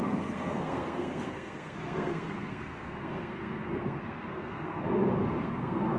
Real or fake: fake